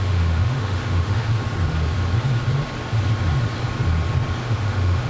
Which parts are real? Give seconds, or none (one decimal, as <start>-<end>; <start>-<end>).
1.3-4.4